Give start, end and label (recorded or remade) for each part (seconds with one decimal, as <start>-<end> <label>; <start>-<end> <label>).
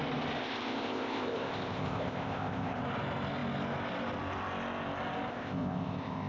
0.0-0.4 recorded; 0.4-2.8 remade; 2.8-5.3 recorded; 5.3-6.3 remade